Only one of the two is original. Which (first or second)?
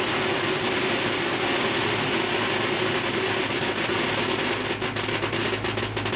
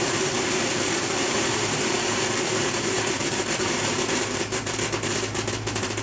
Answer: first